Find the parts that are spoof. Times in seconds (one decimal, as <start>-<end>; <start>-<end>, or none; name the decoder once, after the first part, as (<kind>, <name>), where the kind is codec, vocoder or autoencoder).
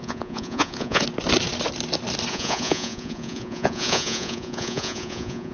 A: 0.0-1.0 (vocoder, Vocos); 2.3-5.5